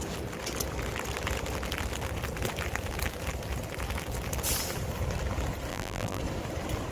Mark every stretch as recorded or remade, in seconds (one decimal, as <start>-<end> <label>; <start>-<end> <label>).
0.0-5.7 recorded; 5.7-6.2 remade; 6.2-6.9 recorded